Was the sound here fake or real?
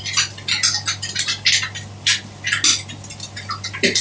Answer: real